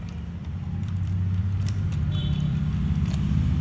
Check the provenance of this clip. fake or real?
fake